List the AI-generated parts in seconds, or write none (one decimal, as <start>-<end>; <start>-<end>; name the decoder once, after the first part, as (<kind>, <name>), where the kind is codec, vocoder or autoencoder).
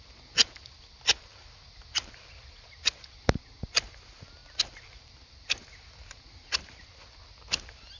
1.3-2.3 (vocoder, BigVGAN v2); 4.4-5.2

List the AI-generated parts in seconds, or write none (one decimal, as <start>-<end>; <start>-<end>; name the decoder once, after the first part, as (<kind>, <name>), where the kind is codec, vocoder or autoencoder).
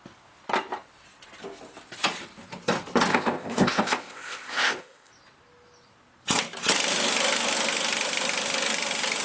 3.1-5.1 (codec, ZipCodec)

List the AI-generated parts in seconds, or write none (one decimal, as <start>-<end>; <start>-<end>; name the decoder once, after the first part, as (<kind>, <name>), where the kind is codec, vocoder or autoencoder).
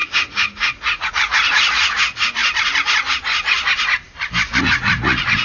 0.0-2.4 (vocoder, Vocos); 4.6-5.4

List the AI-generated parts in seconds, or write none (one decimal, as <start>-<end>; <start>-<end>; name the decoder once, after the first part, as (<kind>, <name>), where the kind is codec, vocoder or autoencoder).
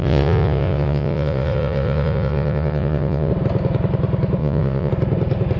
0.0-3.3 (vocoder, Vocos); 4.4-4.9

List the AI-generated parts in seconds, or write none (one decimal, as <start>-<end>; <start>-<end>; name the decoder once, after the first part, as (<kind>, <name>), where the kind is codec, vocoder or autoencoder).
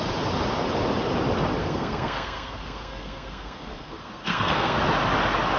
1.6-4.8 (codec, SNAC)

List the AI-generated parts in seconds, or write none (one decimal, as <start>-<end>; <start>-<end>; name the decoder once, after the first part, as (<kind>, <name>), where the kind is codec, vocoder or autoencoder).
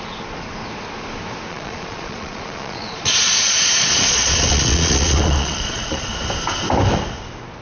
1.5-6.1 (vocoder, Vocos)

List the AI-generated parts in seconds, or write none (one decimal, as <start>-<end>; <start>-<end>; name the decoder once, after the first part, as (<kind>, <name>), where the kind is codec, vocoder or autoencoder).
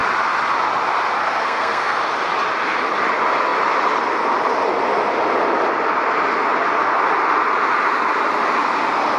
1.2-2.0 (codec, SNAC)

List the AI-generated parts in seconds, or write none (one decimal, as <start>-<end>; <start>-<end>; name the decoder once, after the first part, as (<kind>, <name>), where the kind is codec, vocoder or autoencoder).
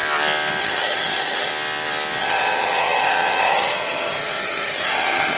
0.6-1.5 (vocoder, HiFi-GAN); 2.2-5.4